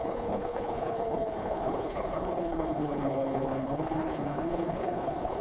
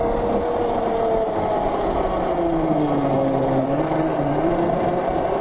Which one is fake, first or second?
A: first